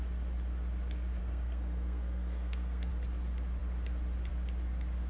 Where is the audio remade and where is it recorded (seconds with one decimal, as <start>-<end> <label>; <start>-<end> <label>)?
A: 0.0-1.2 recorded; 1.2-2.9 remade; 2.9-5.1 recorded